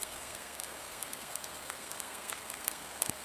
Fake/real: fake